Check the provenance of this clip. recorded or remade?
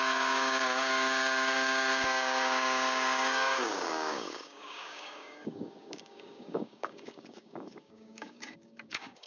remade